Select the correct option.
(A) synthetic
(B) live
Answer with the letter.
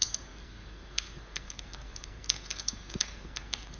A